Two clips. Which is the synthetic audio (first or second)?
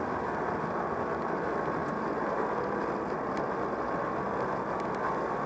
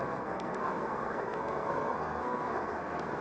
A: second